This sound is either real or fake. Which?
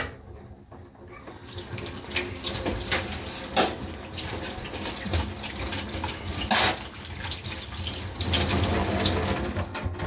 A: real